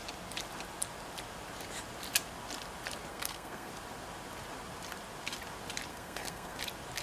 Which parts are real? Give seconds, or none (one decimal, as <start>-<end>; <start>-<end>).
0.0-3.1; 3.7-5.9; 6.6-7.0

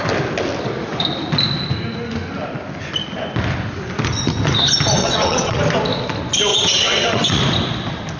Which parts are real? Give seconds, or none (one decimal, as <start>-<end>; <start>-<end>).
0.0-5.0; 5.6-6.5; 7.4-8.2